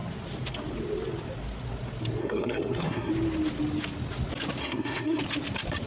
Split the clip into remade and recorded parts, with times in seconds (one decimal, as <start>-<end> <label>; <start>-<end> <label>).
0.0-2.2 recorded; 2.2-3.1 remade; 3.1-4.6 recorded; 4.6-5.2 remade; 5.2-5.9 recorded